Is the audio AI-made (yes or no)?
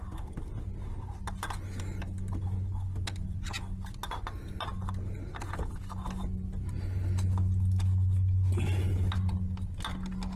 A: no